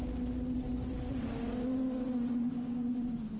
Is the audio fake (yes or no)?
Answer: no